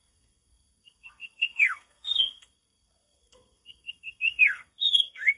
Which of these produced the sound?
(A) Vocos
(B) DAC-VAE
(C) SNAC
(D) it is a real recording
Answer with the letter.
C